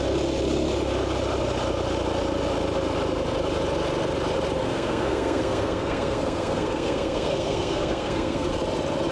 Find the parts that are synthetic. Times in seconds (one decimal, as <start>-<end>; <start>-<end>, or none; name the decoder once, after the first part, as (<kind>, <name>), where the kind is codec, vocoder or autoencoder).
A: 4.6-8.5 (codec, SNAC)